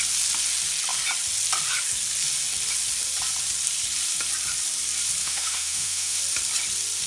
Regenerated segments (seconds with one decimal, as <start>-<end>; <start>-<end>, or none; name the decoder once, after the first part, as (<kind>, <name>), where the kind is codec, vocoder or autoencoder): 5.2-6.2 (autoencoder, DAC-VAE)